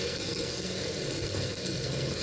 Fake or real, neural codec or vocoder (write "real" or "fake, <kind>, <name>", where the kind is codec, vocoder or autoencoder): fake, codec, SNAC